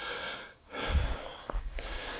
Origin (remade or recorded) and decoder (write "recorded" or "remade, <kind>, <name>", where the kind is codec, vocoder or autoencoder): remade, codec, DAC